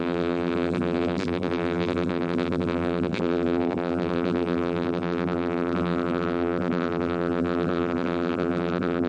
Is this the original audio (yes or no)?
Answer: no